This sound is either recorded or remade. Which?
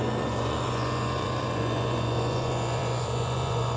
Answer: remade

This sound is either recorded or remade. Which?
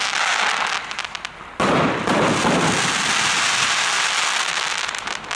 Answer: recorded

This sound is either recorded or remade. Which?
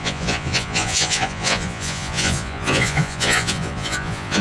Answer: remade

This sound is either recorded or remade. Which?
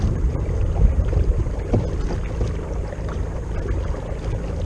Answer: recorded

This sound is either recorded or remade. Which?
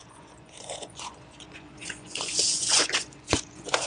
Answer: remade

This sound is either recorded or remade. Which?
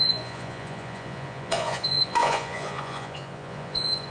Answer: remade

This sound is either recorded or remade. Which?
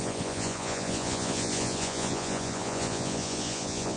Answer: remade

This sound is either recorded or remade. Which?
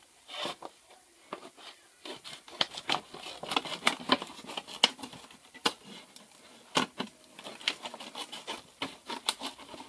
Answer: recorded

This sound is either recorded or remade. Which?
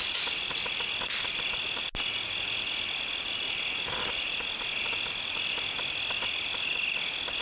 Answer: recorded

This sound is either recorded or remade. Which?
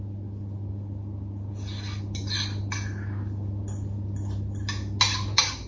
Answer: recorded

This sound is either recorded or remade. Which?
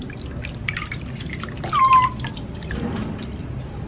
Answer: recorded